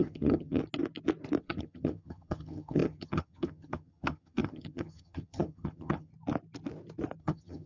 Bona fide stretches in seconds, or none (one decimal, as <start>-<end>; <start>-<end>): 0.6-1.4; 6.1-7.2